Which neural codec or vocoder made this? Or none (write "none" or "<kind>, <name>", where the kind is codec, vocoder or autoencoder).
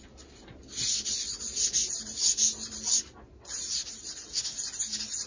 none